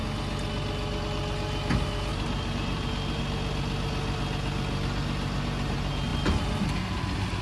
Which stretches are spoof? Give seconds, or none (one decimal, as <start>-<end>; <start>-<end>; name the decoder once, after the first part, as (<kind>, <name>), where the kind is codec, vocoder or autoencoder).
2.1-3.2 (vocoder, BigVGAN v2); 6.1-6.8